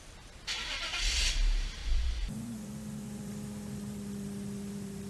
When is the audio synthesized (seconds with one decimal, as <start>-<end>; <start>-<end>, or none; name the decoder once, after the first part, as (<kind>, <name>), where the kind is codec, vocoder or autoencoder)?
1.8-3.3 (vocoder, Vocos)

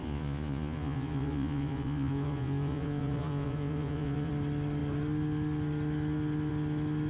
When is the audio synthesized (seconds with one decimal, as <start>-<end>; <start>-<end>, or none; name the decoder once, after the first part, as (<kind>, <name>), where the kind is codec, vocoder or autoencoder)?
0.0-4.3 (vocoder, Vocos)